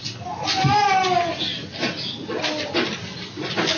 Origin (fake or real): real